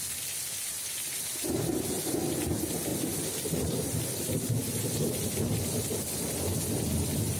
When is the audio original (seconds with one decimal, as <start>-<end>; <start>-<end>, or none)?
0.0-7.4